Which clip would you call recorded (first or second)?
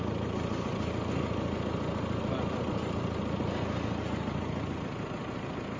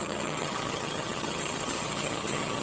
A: first